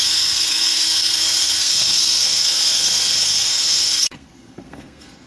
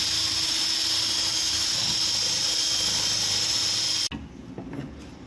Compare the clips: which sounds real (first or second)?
second